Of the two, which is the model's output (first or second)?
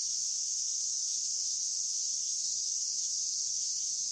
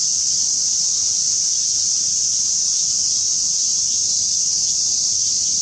first